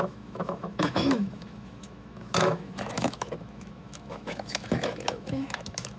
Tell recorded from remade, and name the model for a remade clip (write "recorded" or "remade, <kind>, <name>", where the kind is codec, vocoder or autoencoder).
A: remade, autoencoder, DAC-VAE